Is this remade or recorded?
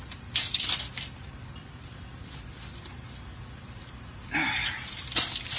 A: recorded